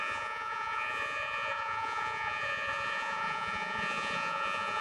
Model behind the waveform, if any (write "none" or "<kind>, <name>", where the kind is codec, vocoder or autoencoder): vocoder, Vocos